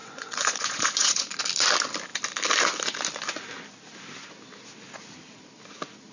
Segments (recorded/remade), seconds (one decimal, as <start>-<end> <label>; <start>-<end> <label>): 0.0-1.5 remade; 1.5-6.1 recorded